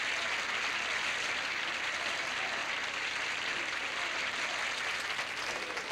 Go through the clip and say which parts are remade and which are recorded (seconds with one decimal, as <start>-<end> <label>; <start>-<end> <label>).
0.0-2.6 recorded; 2.6-4.7 remade; 4.7-5.9 recorded